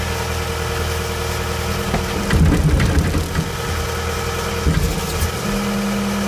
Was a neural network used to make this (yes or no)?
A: no